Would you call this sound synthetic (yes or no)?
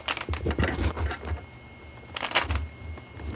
no